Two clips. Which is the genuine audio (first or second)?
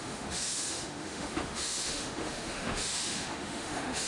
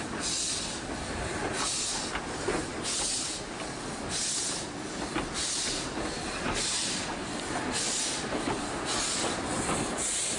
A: second